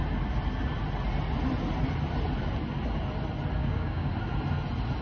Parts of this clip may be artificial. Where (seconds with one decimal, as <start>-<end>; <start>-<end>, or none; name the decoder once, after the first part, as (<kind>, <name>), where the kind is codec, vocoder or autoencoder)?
3.6-4.1 (codec, DAC)